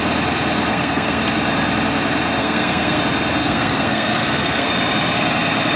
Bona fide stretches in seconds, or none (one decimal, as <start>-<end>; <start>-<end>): 0.0-0.7; 1.2-2.4; 3.0-3.4; 4.7-5.8